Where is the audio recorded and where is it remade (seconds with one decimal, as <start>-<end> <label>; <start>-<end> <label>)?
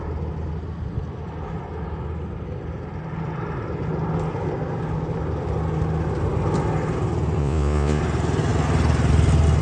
0.0-7.4 recorded; 7.4-8.0 remade; 8.0-9.6 recorded